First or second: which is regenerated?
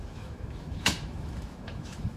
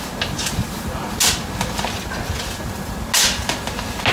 first